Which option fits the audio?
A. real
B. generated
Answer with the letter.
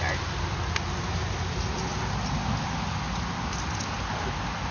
A